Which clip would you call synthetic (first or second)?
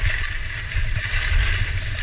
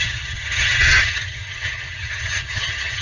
second